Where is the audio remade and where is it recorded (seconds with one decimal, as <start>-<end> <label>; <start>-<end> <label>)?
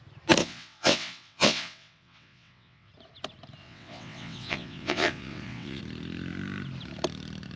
0.0-0.4 recorded; 0.4-2.9 remade; 2.9-3.6 recorded; 3.6-5.8 remade; 5.8-7.6 recorded